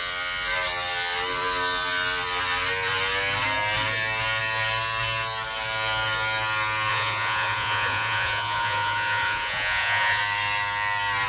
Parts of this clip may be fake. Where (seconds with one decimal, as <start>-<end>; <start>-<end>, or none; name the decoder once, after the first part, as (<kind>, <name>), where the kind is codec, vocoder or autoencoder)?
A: 6.9-10.2 (vocoder, Vocos)